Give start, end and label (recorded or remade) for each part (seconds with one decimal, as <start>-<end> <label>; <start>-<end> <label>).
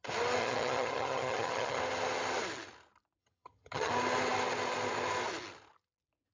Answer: 0.0-0.4 recorded; 0.4-1.8 remade; 1.8-3.2 recorded; 3.2-3.9 remade; 3.9-6.3 recorded